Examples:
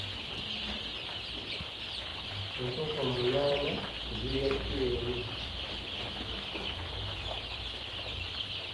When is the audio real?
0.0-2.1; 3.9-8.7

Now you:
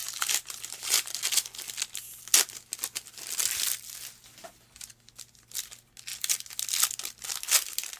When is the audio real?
1.2-8.0

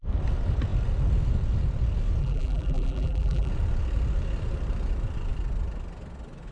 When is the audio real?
0.0-2.2; 3.5-6.5

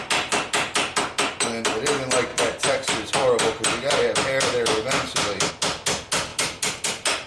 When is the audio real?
0.0-2.3; 5.5-7.3

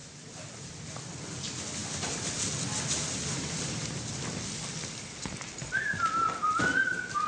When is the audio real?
0.0-7.3

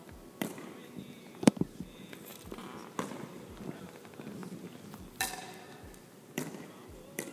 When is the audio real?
2.3-3.1

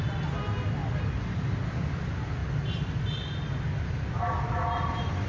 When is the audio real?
0.0-5.3

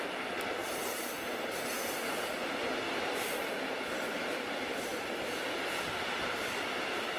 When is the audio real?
0.6-2.3